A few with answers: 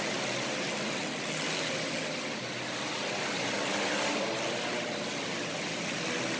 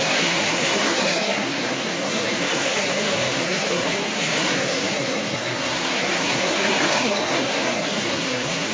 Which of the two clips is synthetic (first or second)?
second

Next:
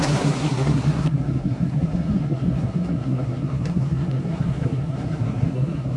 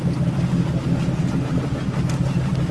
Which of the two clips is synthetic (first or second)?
first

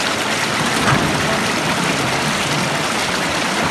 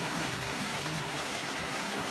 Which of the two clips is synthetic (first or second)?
second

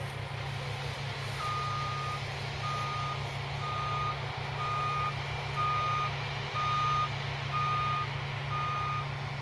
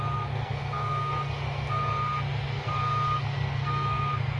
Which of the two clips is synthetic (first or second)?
second